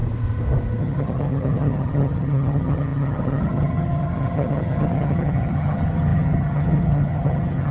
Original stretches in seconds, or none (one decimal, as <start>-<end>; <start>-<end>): 0.0-0.8